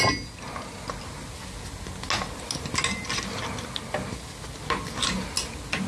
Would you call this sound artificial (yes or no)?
no